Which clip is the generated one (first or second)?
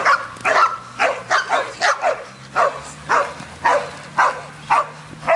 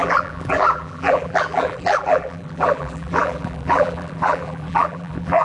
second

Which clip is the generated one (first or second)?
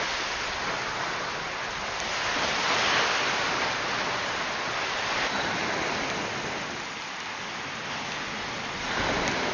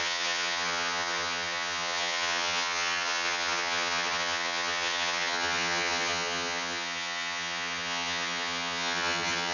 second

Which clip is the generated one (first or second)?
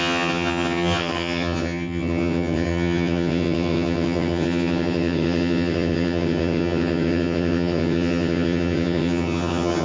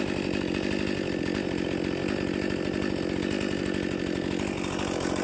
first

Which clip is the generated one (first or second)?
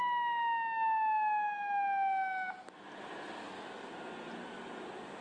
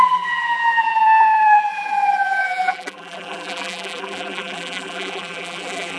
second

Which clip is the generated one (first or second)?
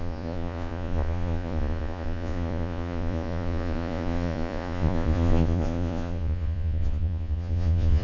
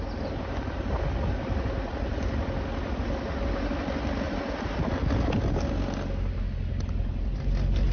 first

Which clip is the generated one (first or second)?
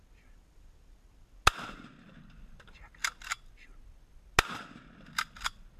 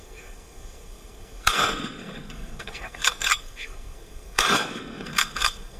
second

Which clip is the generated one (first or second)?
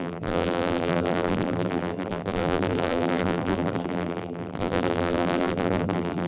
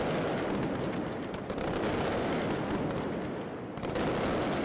first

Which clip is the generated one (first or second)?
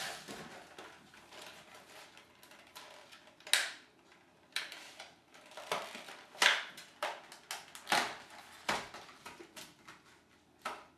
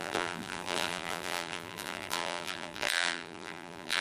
second